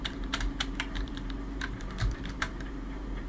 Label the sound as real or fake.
fake